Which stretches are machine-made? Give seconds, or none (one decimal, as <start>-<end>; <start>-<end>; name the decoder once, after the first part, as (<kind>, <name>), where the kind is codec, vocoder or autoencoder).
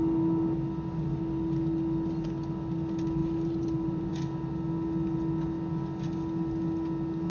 3.2-4.1 (vocoder, BigVGAN v2)